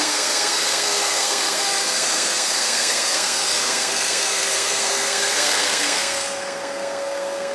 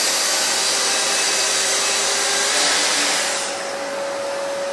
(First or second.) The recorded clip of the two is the second